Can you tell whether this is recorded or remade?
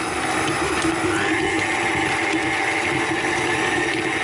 recorded